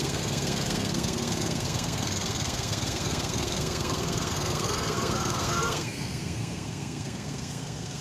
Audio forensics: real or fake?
fake